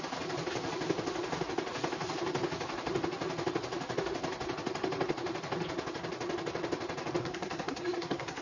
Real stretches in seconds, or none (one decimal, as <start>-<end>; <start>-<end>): 0.0-7.2